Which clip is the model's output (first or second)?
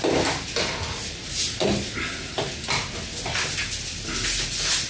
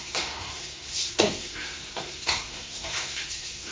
second